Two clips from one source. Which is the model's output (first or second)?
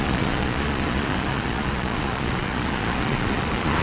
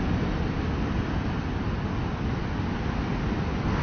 first